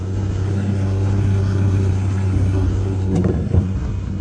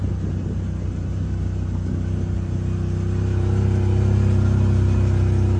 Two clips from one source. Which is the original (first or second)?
second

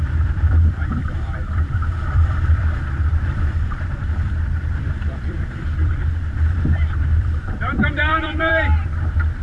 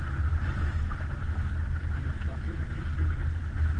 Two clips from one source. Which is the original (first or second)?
second